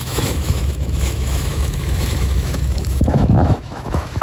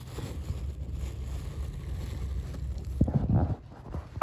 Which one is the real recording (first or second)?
second